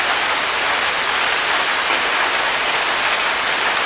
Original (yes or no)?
yes